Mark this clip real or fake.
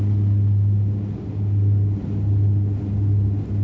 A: real